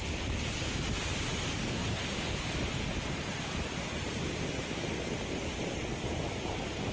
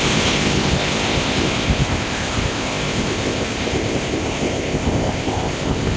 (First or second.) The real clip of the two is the first